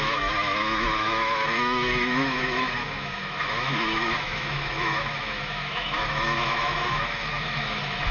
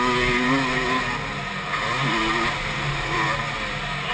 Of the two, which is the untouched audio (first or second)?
second